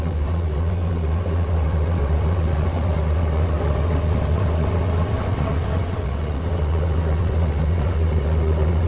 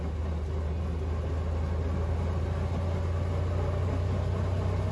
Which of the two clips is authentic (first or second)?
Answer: second